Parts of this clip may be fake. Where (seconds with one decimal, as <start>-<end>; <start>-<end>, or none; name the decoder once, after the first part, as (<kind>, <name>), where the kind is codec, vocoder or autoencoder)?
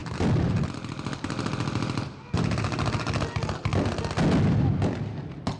0.0-3.7 (vocoder, BigVGAN v2)